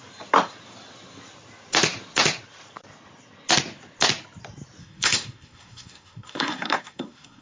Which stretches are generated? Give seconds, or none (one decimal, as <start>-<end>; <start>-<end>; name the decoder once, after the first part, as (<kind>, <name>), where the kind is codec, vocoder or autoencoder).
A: 4.8-7.4 (codec, SNAC)